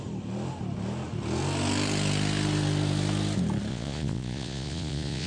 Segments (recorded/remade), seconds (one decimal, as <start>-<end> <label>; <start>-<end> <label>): 0.0-3.7 recorded; 3.7-5.3 remade

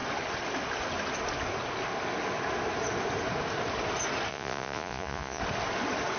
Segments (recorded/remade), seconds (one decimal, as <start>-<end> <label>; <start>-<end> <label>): 0.0-4.3 recorded; 4.3-5.4 remade; 5.4-6.2 recorded

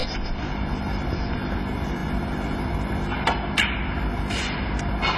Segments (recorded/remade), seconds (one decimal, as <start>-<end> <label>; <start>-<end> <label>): 0.0-5.2 recorded

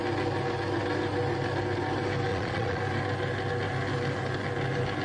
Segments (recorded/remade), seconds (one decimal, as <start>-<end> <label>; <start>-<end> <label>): 0.0-2.3 recorded; 2.3-2.8 remade; 2.8-5.0 recorded

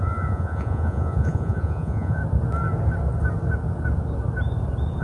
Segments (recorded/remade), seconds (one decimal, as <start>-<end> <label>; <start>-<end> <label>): 0.0-2.2 remade; 2.2-5.0 recorded

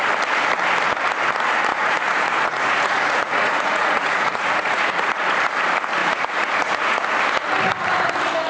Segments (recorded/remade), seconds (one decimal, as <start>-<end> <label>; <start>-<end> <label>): 0.0-1.7 recorded; 1.7-5.4 remade; 5.4-6.0 recorded; 6.0-7.0 remade; 7.0-8.5 recorded